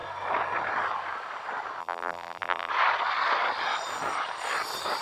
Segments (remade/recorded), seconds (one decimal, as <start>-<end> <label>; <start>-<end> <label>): 0.0-1.8 recorded; 1.8-2.7 remade; 2.7-5.0 recorded